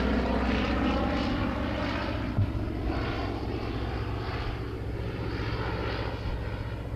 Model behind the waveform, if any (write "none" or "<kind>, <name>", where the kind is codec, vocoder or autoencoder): none